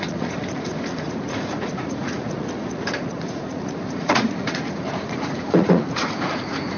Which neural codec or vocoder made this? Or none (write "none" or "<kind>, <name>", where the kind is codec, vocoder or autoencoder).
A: vocoder, Vocos